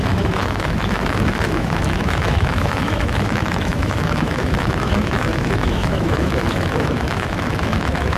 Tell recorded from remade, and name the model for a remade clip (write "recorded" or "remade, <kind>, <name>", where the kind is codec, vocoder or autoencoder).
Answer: remade, autoencoder, DAC-VAE